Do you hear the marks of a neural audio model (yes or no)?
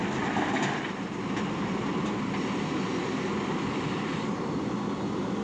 no